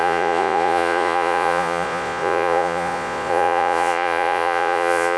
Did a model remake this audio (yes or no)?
yes